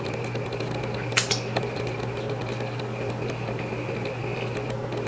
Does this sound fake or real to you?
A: real